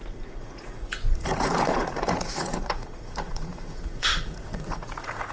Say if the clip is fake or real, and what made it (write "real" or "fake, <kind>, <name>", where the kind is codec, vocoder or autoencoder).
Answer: fake, vocoder, Vocos